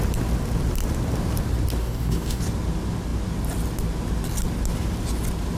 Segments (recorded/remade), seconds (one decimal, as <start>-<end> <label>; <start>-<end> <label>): 0.0-1.8 recorded; 1.8-2.4 remade; 2.4-5.6 recorded